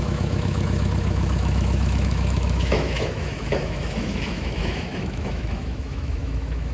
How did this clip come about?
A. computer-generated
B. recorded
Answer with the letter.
A